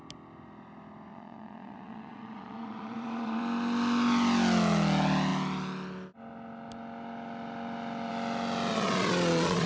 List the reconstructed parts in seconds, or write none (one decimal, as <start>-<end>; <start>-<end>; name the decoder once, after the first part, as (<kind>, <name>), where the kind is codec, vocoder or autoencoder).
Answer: 1.1-3.4 (vocoder, Vocos); 8.7-9.7